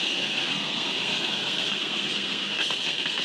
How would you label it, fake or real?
fake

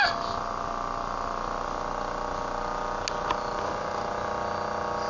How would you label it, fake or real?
real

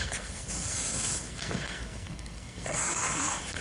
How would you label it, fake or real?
fake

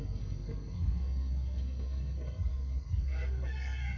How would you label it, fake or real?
fake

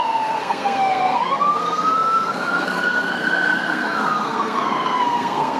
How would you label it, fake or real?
fake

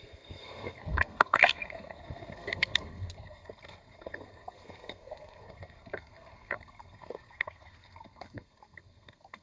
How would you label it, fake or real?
fake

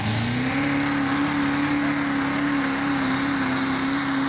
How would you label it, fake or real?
real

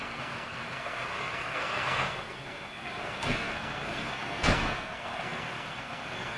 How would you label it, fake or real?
fake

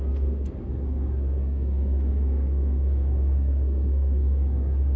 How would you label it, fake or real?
fake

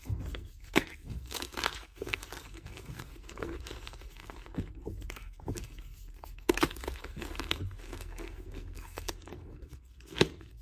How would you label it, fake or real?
fake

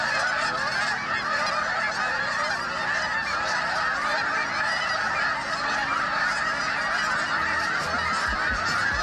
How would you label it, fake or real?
real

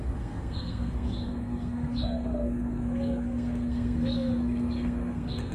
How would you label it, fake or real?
fake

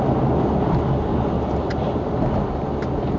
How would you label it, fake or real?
real